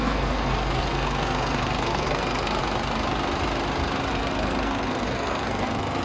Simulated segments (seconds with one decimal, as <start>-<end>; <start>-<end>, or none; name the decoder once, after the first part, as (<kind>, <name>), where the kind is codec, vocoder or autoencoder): 0.0-2.6 (codec, SNAC); 4.1-6.0